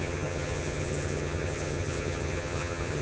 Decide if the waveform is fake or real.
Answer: fake